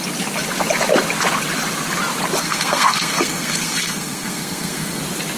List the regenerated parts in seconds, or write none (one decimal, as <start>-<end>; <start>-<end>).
2.4-5.0